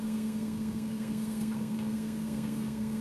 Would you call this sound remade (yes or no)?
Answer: yes